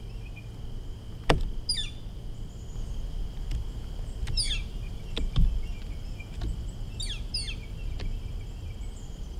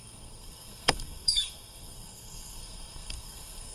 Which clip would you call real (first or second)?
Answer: first